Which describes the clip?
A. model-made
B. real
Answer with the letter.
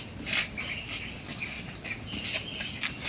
B